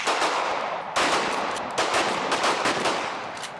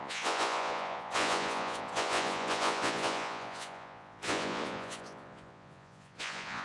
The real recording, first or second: first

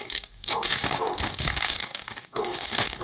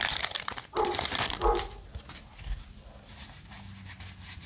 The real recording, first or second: second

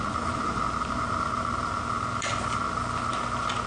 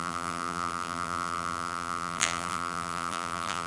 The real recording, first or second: first